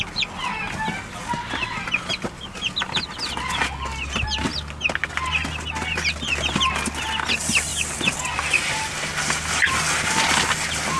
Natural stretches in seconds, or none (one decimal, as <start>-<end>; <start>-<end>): 0.0-11.0